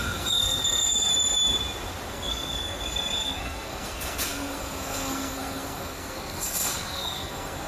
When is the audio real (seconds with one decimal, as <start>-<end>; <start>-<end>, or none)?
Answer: 1.1-2.1

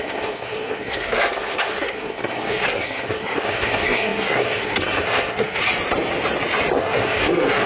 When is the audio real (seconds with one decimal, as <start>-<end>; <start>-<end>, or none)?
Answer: 5.6-6.8

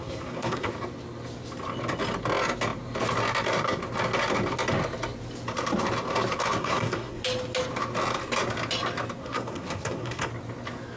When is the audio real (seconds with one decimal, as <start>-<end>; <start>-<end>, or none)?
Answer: 0.7-6.6; 7.2-9.2; 10.3-11.0

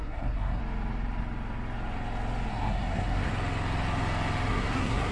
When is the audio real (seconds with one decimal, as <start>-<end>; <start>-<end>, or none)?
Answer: 0.6-2.5; 3.3-4.5

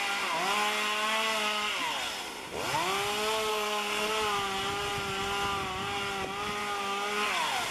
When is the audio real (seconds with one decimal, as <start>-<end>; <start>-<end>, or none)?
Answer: 0.0-3.5; 4.1-7.7

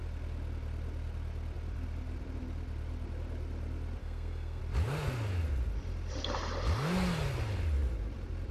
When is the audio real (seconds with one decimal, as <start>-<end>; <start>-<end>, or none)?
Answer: 0.0-4.0; 4.6-8.5

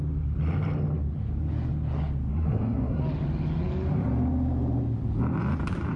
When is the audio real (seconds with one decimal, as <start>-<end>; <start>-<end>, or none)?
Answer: 0.0-2.3; 3.0-6.0

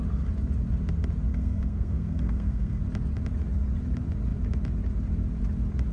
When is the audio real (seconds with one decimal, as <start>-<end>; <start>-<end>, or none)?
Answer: 0.0-1.3; 2.8-5.9